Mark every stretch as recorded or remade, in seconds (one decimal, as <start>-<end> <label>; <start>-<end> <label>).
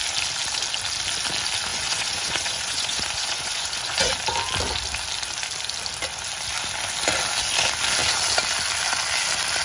0.0-1.7 recorded; 1.7-4.1 remade; 4.1-9.6 recorded